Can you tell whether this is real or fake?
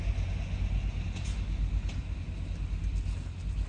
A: real